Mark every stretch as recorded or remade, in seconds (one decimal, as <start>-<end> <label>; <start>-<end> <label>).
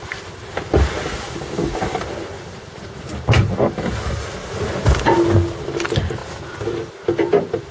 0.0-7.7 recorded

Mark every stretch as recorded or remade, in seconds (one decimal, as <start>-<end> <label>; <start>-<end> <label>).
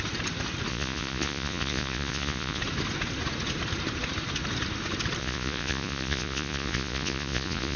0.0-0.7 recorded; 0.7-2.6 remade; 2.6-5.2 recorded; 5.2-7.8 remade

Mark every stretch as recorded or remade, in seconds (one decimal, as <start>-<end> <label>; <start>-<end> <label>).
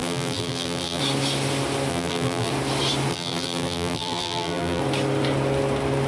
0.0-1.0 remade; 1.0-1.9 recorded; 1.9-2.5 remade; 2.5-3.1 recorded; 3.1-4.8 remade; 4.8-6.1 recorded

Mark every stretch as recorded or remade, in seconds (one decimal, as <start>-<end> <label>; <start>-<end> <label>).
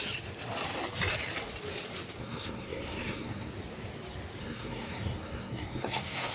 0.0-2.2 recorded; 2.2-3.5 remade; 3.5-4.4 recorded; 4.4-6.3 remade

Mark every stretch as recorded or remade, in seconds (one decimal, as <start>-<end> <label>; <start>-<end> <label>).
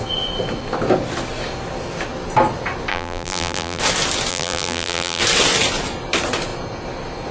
0.0-2.9 recorded; 2.9-3.8 remade; 3.8-4.3 recorded; 4.3-5.2 remade; 5.2-7.3 recorded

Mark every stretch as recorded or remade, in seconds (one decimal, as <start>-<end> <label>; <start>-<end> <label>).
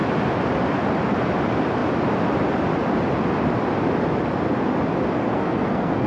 0.0-5.2 recorded; 5.2-6.1 remade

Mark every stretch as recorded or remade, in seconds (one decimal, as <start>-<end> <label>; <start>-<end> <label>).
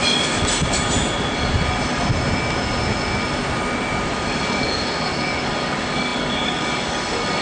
0.0-4.4 recorded; 4.4-7.4 remade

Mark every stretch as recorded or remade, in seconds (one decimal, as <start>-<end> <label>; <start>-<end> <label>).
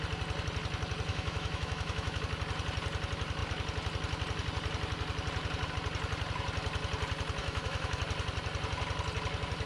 0.0-1.1 recorded; 1.1-2.2 remade; 2.2-7.4 recorded; 7.4-8.0 remade; 8.0-9.7 recorded